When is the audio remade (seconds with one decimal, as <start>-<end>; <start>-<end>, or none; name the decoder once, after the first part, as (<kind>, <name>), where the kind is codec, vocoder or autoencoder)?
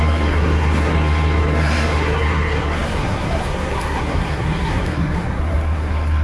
0.0-6.2 (codec, SNAC)